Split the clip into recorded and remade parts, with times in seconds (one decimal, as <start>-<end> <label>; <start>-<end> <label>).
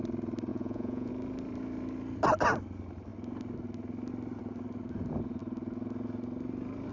0.0-0.5 recorded; 0.5-1.1 remade; 1.1-6.9 recorded